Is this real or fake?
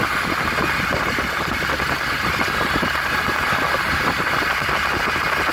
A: real